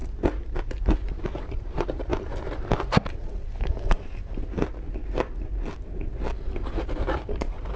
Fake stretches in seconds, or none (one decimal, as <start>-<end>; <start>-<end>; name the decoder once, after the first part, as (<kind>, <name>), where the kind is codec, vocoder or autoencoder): 1.4-2.1 (vocoder, BigVGAN v2); 6.8-7.8